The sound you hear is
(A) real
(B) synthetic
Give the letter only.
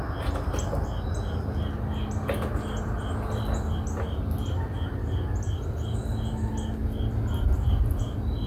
A